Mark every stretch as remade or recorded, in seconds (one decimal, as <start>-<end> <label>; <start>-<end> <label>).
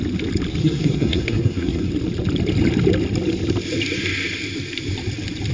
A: 0.0-0.6 recorded; 0.6-1.9 remade; 1.9-5.5 recorded